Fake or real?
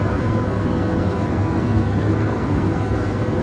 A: fake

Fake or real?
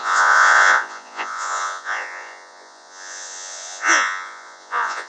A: fake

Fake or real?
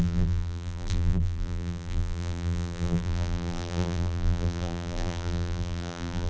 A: fake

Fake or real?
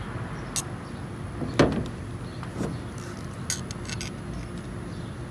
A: real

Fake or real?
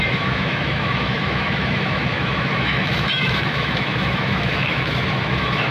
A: fake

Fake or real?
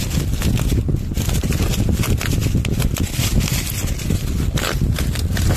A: real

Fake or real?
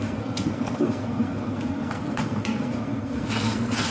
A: fake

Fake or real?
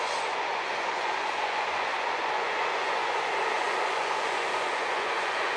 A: fake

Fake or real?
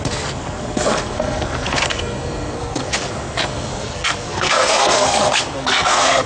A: fake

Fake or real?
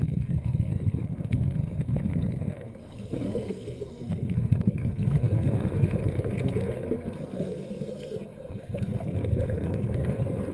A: fake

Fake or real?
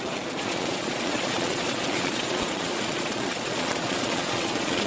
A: fake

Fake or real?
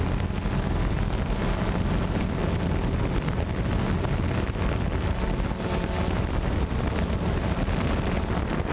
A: real